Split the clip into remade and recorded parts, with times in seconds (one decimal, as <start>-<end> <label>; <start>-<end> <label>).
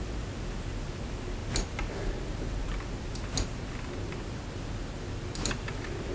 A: 0.0-6.1 recorded